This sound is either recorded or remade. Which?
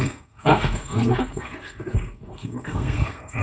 remade